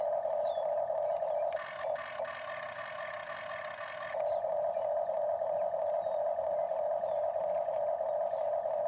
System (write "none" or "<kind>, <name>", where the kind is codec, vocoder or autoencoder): none